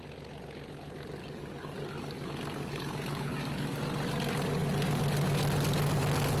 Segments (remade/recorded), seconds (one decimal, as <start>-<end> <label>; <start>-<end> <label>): 0.0-1.2 recorded; 1.2-3.8 remade; 3.8-6.4 recorded